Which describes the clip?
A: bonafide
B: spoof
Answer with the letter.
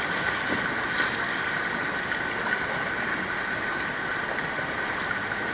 A